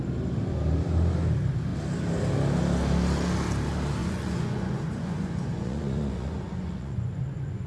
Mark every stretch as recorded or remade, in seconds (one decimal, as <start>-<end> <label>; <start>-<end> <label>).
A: 0.0-4.0 recorded; 4.0-7.7 remade

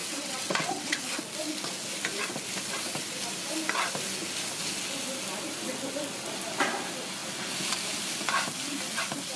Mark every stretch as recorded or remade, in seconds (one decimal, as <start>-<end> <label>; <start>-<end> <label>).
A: 0.0-1.0 remade; 1.0-9.4 recorded

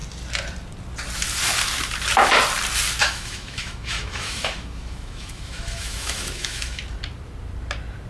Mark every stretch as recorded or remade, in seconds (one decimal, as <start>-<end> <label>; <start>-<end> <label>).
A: 0.0-3.0 recorded; 3.0-6.8 remade; 6.8-8.1 recorded

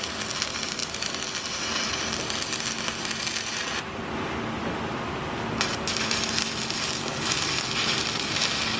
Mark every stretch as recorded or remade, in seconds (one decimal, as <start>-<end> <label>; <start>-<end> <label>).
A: 0.0-8.8 recorded

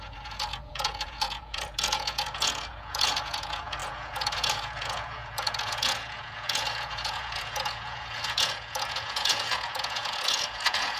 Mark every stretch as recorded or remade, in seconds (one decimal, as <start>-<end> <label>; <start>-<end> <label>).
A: 0.0-11.0 remade

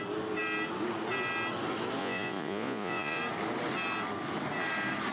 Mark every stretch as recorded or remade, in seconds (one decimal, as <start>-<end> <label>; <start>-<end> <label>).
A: 0.0-2.0 recorded; 2.0-3.2 remade; 3.2-5.1 recorded